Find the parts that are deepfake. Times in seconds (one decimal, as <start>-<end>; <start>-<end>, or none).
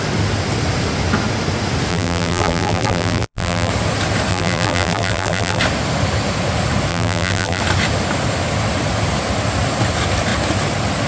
1.9-3.7; 4.3-5.6; 6.9-7.6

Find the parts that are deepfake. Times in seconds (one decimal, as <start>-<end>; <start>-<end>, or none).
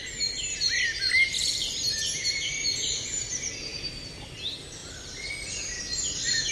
1.4-3.9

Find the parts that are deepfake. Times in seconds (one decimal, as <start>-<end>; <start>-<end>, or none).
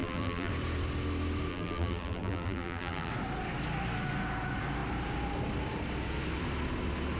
0.0-0.5; 1.5-3.1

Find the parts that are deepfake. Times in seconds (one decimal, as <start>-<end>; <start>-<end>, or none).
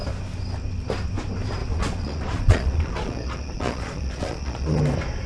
1.6-4.8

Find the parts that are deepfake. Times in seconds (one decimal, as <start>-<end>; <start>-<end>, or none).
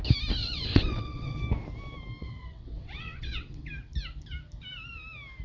0.4-1.4; 2.2-3.6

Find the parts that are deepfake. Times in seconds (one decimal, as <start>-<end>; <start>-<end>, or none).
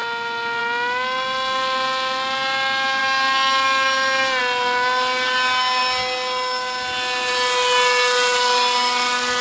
none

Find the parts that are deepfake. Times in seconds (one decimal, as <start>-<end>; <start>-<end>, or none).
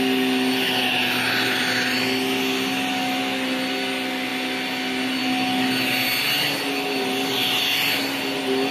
none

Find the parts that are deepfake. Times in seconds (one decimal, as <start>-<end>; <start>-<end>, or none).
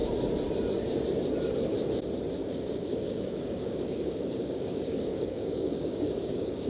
2.4-6.7